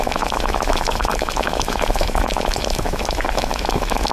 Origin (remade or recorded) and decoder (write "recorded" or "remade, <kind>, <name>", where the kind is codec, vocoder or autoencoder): remade, autoencoder, DAC-VAE